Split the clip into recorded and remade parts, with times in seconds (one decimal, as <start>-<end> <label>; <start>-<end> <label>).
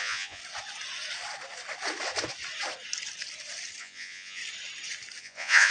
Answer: 0.0-0.4 remade; 0.4-3.8 recorded; 3.8-4.4 remade; 4.4-5.2 recorded; 5.2-5.7 remade